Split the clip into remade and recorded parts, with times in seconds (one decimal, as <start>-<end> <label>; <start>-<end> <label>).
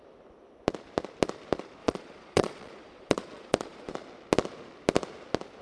0.0-1.8 recorded; 1.8-3.9 remade; 3.9-5.6 recorded